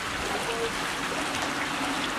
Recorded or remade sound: recorded